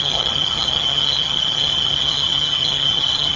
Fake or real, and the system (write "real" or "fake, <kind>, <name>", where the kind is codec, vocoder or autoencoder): fake, vocoder, HiFi-GAN